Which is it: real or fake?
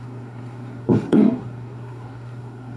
fake